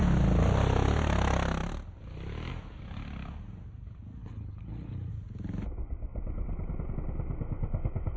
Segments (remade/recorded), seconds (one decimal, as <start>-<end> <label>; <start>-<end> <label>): 0.0-4.2 recorded; 4.2-5.1 remade; 5.1-8.2 recorded